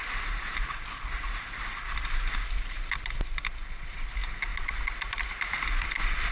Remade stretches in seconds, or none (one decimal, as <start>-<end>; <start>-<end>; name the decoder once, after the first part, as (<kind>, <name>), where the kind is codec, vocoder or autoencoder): none